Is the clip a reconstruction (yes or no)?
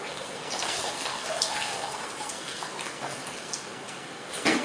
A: yes